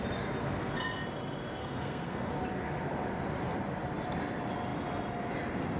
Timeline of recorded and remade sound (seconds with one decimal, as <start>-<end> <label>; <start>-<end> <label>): 0.0-1.6 recorded; 1.6-2.3 remade; 2.3-5.8 recorded

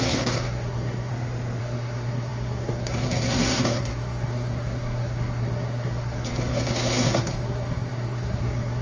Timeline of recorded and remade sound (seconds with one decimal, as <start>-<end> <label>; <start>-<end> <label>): 0.0-1.1 remade; 1.1-1.6 recorded; 1.6-8.8 remade

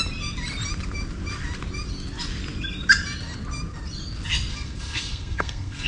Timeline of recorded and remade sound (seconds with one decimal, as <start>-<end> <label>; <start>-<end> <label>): 0.0-4.5 recorded; 4.5-5.9 remade

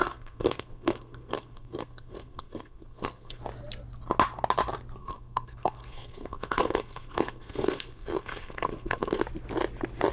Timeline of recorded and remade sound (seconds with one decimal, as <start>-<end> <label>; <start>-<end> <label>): 0.0-3.4 remade; 3.4-5.0 recorded; 5.0-9.2 remade; 9.2-10.1 recorded

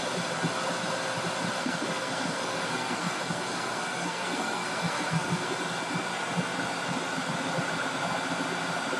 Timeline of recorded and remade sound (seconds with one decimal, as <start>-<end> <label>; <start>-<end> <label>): 0.0-1.6 recorded; 1.6-5.5 remade; 5.5-9.0 recorded

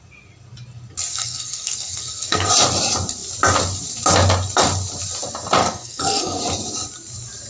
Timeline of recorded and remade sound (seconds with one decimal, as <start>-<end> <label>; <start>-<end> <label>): 0.0-1.1 recorded; 1.1-2.5 remade; 2.5-5.6 recorded; 5.6-6.4 remade; 6.4-7.5 recorded

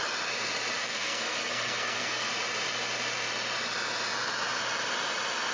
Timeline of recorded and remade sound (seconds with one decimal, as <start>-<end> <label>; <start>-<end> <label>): 0.0-0.8 recorded; 0.8-2.3 remade; 2.3-5.5 recorded